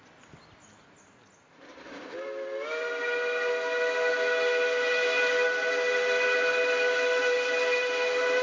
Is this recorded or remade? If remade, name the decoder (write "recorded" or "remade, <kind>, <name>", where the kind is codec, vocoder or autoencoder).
recorded